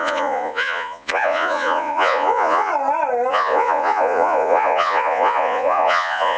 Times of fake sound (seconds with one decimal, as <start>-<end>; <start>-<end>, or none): 0.0-2.7; 3.3-6.4